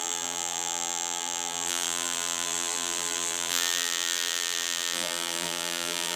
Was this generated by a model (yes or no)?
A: yes